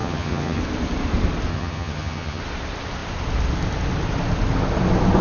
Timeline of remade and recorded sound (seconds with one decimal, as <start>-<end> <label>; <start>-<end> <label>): 0.0-0.6 remade; 0.6-1.5 recorded; 1.5-2.4 remade; 2.4-5.2 recorded